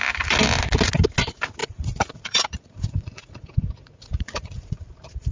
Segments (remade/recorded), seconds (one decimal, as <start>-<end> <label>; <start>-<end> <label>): 0.0-1.6 recorded; 1.6-4.8 remade; 4.8-5.3 recorded